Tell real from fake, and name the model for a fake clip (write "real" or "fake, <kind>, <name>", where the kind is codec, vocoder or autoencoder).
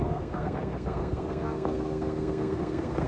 fake, codec, SNAC